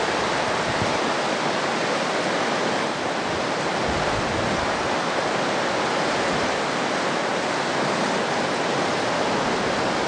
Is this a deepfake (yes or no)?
no